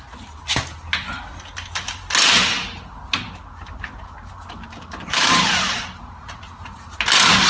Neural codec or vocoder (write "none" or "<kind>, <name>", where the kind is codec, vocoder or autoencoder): none